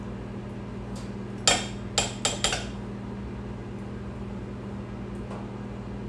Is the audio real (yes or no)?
yes